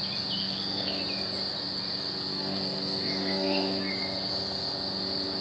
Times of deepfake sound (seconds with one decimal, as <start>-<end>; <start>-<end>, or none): 0.4-1.0; 2.3-3.9